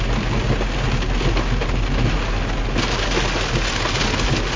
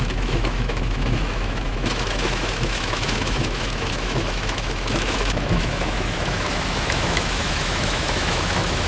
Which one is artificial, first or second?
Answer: second